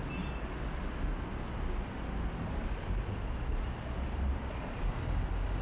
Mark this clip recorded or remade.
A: recorded